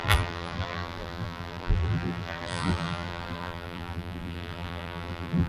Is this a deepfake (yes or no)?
yes